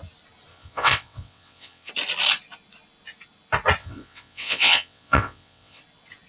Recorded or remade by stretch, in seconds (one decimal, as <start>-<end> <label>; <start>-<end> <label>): 0.0-0.5 recorded; 0.5-1.9 remade; 1.9-3.8 recorded; 3.8-5.8 remade; 5.8-6.3 recorded